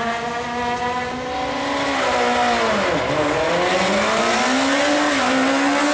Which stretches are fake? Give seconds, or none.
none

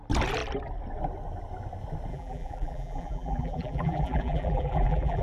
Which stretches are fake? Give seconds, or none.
2.1-5.2 (vocoder, BigVGAN v2)

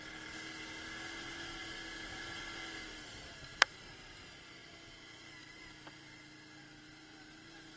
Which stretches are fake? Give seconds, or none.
1.6-2.4 (vocoder, BigVGAN v2); 3.1-3.9

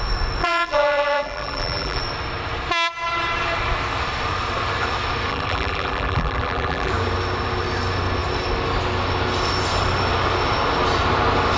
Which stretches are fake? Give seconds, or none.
0.4-2.0 (vocoder, BigVGAN v2); 5.3-6.9